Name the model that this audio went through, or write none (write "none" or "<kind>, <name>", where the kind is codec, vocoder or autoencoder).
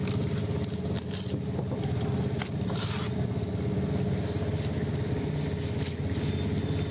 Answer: none